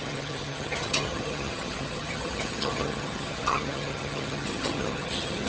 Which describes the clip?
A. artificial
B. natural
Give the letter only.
A